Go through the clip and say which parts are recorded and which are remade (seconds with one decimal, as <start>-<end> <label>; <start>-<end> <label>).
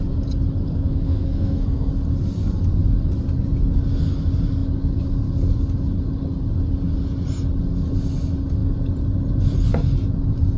0.0-0.7 recorded; 0.7-1.9 remade; 1.9-10.6 recorded